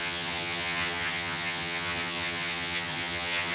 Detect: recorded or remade remade